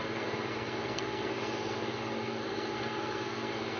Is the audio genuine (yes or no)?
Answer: no